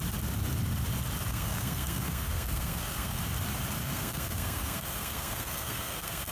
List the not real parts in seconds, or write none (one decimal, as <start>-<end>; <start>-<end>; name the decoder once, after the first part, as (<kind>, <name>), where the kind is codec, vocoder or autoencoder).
1.3-3.2 (codec, SNAC); 3.8-6.3